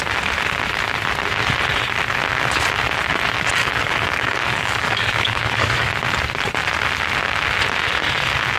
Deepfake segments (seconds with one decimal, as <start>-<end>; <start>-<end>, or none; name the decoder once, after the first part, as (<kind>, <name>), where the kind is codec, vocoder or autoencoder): 3.6-5.9 (codec, DAC)